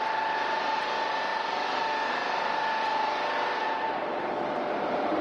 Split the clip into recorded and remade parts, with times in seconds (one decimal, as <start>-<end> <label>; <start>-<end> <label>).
0.0-5.2 remade